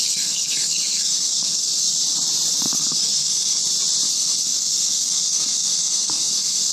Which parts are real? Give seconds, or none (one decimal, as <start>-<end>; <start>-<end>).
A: 1.9-2.5; 3.6-4.1